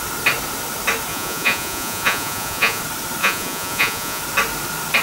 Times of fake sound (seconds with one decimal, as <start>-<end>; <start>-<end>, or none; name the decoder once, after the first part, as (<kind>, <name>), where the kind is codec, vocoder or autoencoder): 1.1-2.8 (vocoder, Vocos); 3.2-4.2